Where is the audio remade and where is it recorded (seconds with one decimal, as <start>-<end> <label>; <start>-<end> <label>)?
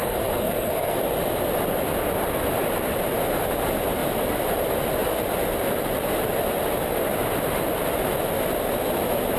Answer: 0.0-1.0 remade; 1.0-9.4 recorded